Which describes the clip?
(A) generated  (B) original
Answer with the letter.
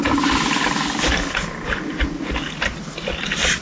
B